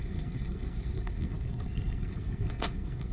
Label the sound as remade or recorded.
remade